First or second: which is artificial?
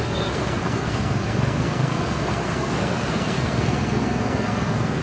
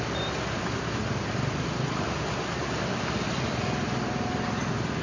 first